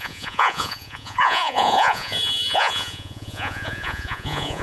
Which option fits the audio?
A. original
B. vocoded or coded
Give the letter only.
B